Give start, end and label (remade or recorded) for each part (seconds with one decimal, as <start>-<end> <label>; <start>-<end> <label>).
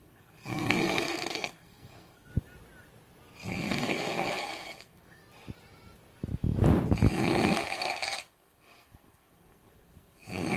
0.0-2.3 remade; 2.3-3.5 recorded; 3.5-5.2 remade; 5.2-7.1 recorded; 7.1-10.6 remade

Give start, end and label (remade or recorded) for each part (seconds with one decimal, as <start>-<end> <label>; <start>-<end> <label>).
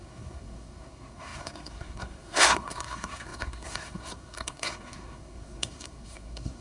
0.0-6.6 remade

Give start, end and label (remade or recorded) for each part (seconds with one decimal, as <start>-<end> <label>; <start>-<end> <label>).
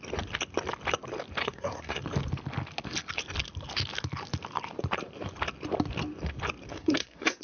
0.0-1.4 recorded; 1.4-2.0 remade; 2.0-6.7 recorded; 6.7-7.4 remade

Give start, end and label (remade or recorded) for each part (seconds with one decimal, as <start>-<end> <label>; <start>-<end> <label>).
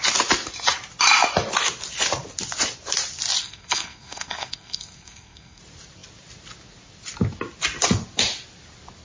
0.0-3.4 recorded; 3.4-5.6 remade; 5.6-9.0 recorded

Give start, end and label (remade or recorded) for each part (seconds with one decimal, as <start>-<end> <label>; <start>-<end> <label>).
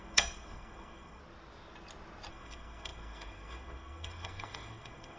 0.0-1.2 remade; 1.2-2.3 recorded; 2.3-5.2 remade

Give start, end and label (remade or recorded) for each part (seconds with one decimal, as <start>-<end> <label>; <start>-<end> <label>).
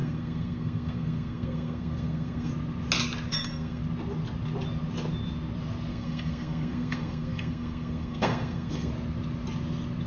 0.0-2.5 remade; 2.5-3.3 recorded; 3.3-3.8 remade; 3.8-5.9 recorded; 5.9-8.9 remade; 8.9-10.1 recorded